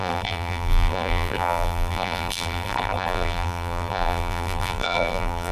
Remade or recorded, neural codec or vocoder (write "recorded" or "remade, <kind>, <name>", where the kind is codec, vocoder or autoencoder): remade, vocoder, BigVGAN v2